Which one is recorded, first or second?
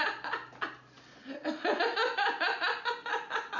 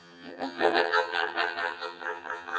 first